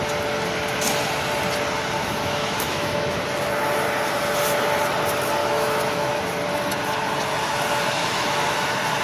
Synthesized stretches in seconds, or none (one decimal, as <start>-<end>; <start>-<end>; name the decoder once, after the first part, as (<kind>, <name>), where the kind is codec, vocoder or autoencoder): 2.0-3.2 (autoencoder, DAC-VAE); 5.4-6.2